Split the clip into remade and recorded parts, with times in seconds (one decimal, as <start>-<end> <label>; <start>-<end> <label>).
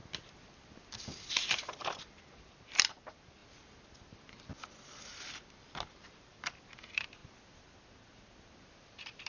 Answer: 0.0-1.3 recorded; 1.3-3.4 remade; 3.4-4.1 recorded; 4.1-4.5 remade; 4.5-5.9 recorded; 5.9-7.2 remade; 7.2-8.8 recorded; 8.8-9.3 remade